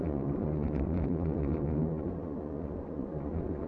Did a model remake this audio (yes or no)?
yes